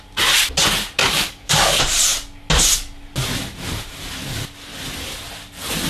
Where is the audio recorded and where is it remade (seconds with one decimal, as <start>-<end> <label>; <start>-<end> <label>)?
0.0-1.0 recorded; 1.0-1.8 remade; 1.8-5.9 recorded